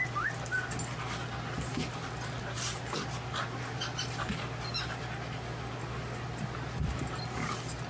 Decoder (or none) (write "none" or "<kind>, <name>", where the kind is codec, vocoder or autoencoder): none